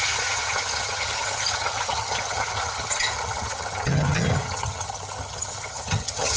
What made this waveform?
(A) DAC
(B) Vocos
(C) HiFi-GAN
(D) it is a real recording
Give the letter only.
C